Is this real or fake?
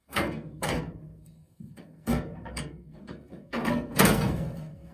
fake